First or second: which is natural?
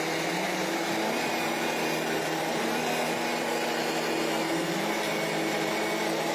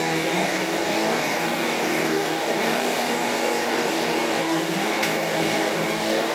first